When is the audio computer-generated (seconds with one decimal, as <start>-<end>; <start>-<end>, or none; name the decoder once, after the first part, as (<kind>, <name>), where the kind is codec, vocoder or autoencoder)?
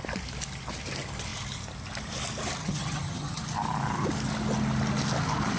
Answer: 2.6-3.4 (vocoder, HiFi-GAN)